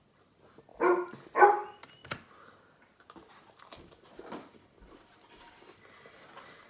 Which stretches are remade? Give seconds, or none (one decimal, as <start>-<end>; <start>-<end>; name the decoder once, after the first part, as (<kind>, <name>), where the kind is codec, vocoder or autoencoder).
none